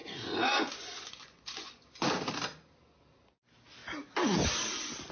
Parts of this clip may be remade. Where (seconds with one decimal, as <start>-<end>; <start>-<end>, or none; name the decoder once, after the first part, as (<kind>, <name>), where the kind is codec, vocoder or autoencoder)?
0.0-2.1 (vocoder, Vocos)

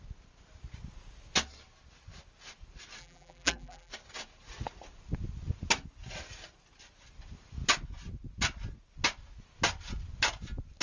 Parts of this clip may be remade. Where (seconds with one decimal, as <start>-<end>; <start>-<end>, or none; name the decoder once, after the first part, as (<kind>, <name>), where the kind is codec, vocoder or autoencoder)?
3.0-3.9 (vocoder, BigVGAN v2)